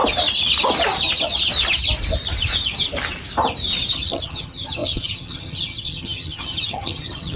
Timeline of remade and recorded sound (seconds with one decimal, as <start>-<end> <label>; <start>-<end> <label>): 0.0-3.9 recorded; 3.9-7.4 remade